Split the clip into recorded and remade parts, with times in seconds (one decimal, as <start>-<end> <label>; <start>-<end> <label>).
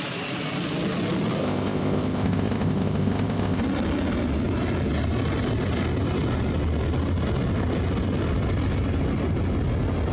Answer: 0.0-1.4 recorded; 1.4-3.6 remade; 3.6-10.1 recorded